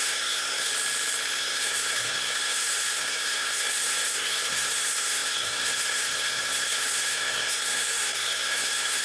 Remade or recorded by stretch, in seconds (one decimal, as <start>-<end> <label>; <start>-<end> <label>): 0.0-0.7 remade; 0.7-1.4 recorded; 1.4-9.0 remade